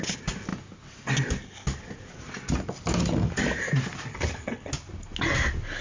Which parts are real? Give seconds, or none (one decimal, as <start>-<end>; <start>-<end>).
0.0-4.1; 4.7-5.8